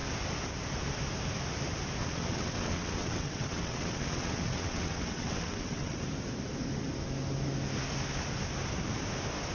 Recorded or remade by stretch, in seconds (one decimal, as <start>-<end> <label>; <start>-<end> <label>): 0.0-2.0 recorded; 2.0-6.0 remade; 6.0-9.5 recorded